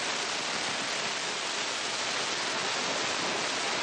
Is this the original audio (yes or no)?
yes